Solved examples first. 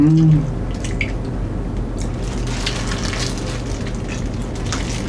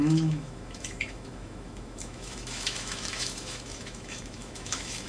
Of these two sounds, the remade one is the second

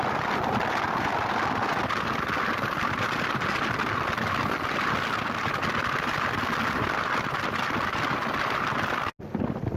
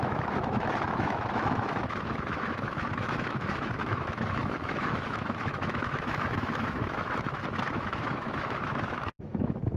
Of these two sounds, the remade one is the second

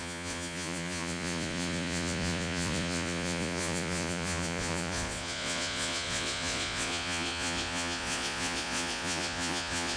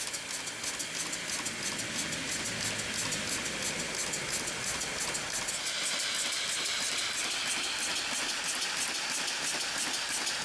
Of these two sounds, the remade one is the first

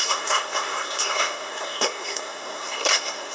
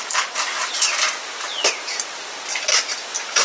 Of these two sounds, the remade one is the first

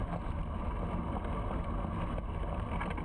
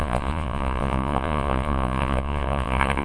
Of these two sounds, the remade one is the second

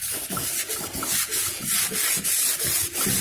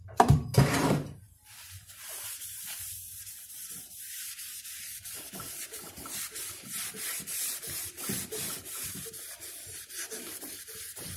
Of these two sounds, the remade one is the second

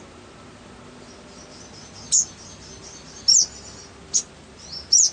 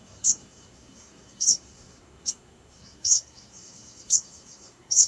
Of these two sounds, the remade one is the second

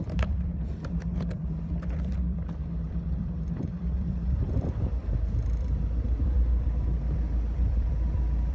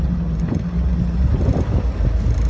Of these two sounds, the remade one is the first